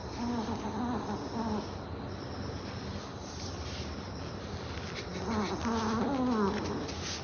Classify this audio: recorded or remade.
recorded